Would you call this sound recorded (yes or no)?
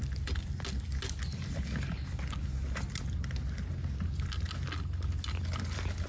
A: yes